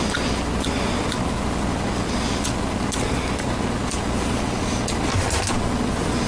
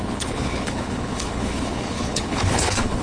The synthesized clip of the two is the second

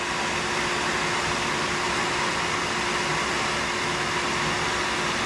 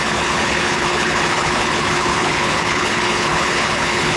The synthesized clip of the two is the second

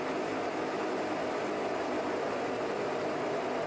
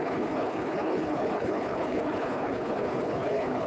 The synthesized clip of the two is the second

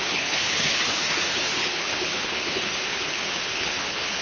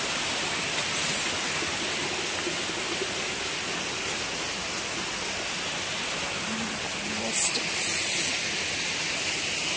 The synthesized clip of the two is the first